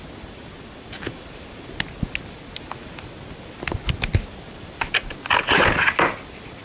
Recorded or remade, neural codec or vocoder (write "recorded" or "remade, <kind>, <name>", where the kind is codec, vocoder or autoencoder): recorded